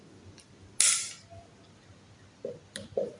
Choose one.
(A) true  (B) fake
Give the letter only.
A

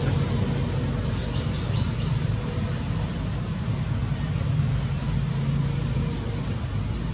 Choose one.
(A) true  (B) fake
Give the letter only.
A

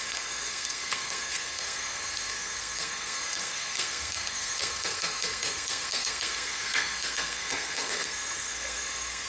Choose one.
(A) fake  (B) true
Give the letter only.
A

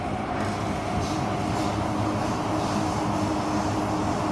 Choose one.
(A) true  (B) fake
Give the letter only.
A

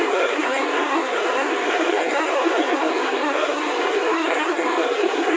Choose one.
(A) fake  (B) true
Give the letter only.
A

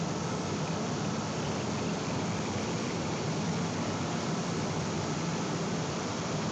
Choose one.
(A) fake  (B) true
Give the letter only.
A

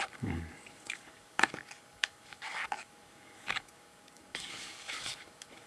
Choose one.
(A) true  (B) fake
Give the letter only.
B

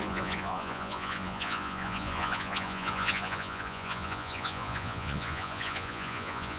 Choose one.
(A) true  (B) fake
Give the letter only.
B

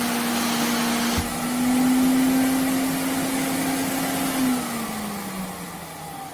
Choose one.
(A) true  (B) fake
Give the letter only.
A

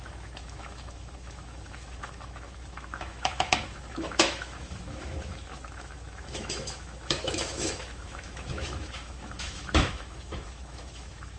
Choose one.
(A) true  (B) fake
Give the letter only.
B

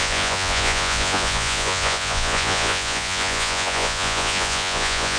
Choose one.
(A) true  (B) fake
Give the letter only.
B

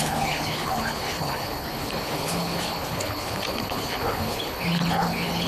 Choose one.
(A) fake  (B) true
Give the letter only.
A